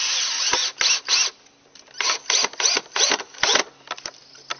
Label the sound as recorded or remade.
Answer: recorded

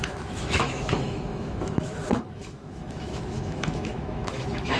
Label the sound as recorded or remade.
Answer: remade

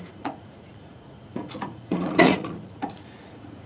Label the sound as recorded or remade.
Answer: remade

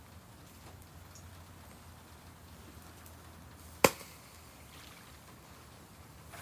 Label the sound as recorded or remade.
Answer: recorded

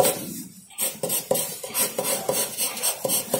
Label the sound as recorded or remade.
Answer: remade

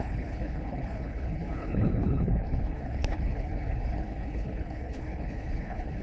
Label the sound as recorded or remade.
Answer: remade